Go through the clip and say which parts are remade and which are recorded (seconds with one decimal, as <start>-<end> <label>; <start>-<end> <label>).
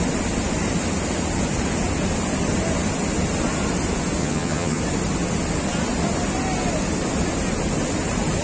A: 0.0-4.2 recorded; 4.2-4.8 remade; 4.8-8.4 recorded